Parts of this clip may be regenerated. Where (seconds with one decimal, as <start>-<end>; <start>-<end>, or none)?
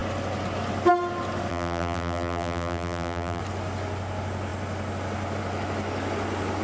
1.5-3.4